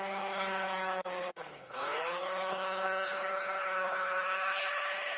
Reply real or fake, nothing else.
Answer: fake